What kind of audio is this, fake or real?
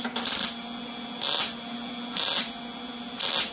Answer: real